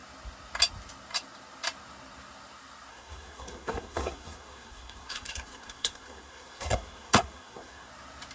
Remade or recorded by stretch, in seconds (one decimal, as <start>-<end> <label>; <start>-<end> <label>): 0.0-2.9 recorded; 2.9-7.9 remade; 7.9-8.3 recorded